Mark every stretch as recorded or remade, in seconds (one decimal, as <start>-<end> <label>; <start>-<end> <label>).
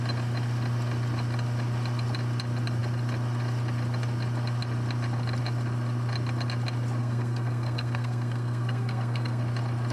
0.0-7.0 recorded; 7.0-9.4 remade; 9.4-9.9 recorded